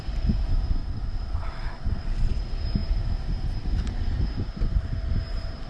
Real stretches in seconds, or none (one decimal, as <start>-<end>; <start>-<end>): 0.0-0.8; 2.4-5.7